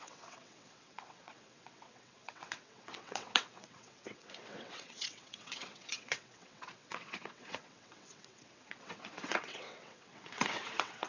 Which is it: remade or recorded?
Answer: remade